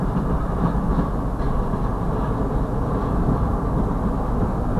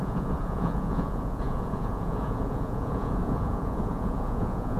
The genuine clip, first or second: first